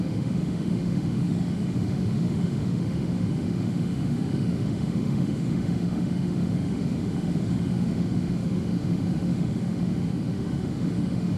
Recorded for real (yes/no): no